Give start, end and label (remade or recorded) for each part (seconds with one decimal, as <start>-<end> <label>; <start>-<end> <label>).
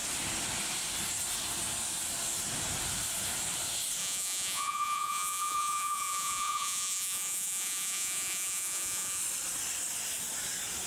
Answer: 0.0-4.0 recorded; 4.0-9.2 remade; 9.2-10.9 recorded